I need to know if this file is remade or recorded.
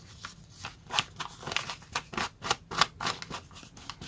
recorded